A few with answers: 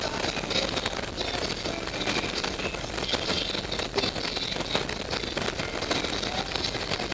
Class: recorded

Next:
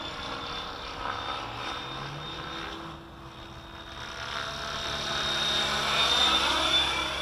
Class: recorded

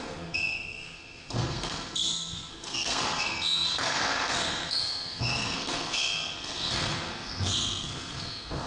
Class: remade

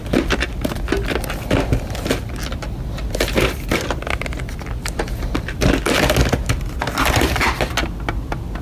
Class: recorded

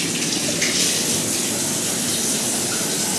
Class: recorded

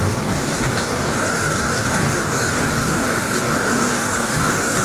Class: remade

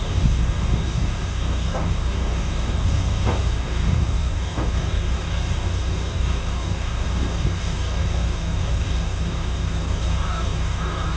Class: remade